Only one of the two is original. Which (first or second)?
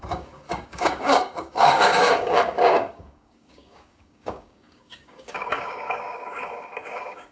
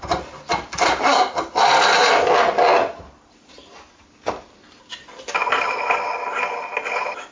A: second